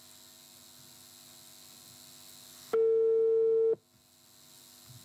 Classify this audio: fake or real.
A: real